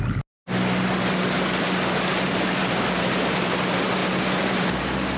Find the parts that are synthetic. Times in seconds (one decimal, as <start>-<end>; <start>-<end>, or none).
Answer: 4.0-4.8